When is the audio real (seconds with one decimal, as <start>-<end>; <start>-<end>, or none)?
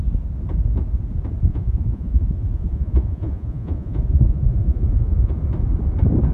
0.0-1.5; 5.3-6.3